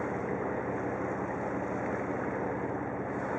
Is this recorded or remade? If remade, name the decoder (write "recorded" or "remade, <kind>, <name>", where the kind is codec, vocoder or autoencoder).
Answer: recorded